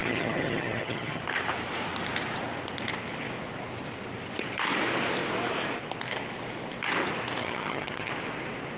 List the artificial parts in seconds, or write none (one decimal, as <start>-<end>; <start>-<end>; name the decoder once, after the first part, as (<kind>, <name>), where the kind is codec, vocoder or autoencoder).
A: 0.0-1.2 (vocoder, HiFi-GAN); 7.4-8.1